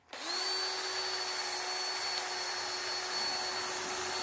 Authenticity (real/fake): real